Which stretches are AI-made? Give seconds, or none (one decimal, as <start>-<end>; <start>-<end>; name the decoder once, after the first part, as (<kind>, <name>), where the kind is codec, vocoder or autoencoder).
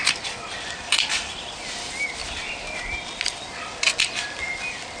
none